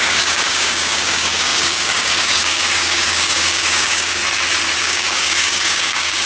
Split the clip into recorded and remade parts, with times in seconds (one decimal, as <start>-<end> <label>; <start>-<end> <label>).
0.0-4.2 remade; 4.2-4.8 recorded; 4.8-6.3 remade